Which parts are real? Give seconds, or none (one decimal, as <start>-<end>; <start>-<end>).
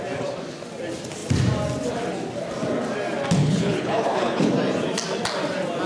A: 0.0-3.4; 4.5-5.9